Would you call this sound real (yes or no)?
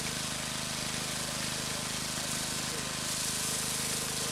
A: yes